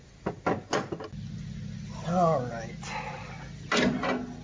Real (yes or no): yes